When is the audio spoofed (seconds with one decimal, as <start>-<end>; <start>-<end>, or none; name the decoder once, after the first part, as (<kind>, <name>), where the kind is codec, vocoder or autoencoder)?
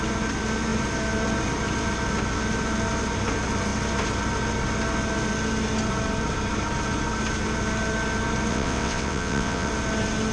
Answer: 8.5-9.7 (vocoder, WaveNeXt)